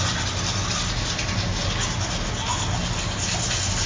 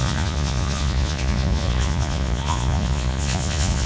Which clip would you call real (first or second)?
first